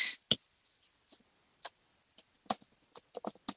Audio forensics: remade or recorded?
recorded